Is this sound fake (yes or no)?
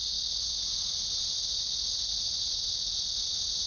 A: no